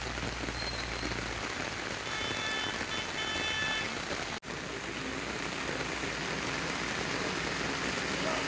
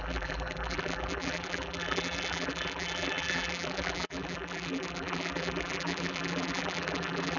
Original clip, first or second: first